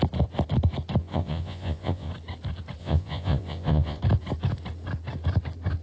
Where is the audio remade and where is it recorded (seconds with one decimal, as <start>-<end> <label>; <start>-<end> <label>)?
0.0-1.0 recorded; 1.0-2.1 remade; 2.1-2.8 recorded; 2.8-4.0 remade; 4.0-5.8 recorded